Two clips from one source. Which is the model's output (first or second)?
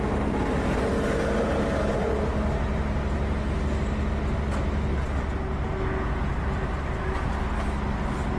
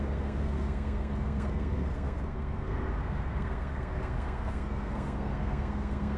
second